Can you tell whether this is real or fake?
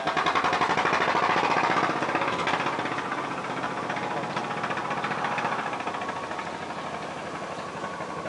real